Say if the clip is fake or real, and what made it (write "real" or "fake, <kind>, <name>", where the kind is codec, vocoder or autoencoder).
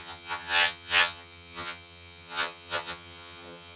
fake, vocoder, HiFi-GAN